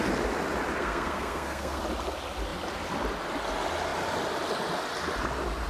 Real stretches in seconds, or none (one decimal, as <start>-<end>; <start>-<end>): 0.0-0.8; 1.8-5.7